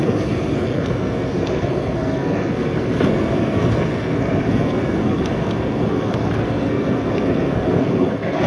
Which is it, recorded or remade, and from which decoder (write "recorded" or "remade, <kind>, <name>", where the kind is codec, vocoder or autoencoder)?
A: remade, codec, SNAC